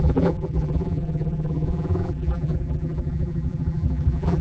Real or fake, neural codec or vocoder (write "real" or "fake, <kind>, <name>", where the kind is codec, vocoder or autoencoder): fake, vocoder, BigVGAN v2